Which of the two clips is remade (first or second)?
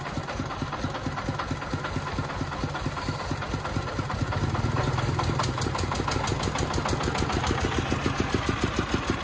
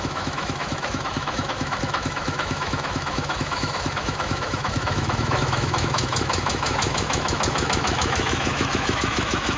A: second